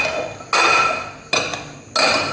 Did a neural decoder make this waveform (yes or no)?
no